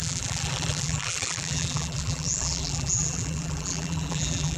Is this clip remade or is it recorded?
remade